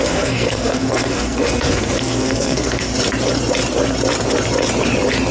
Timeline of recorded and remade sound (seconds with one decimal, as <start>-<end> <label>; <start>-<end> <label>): 0.0-2.9 remade; 2.9-5.3 recorded